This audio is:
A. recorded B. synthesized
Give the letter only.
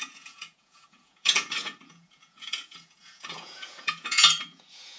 B